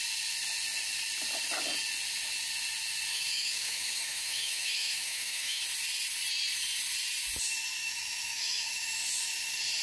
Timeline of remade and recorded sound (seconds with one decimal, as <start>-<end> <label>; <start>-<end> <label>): 0.0-3.1 recorded; 3.1-5.6 remade; 5.6-7.8 recorded; 7.8-9.0 remade; 9.0-9.8 recorded